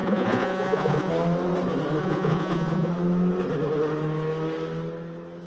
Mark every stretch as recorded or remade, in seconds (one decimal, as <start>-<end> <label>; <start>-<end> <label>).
0.0-1.1 remade; 1.1-2.0 recorded; 2.0-2.9 remade; 2.9-5.5 recorded